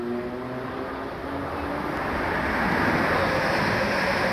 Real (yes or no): yes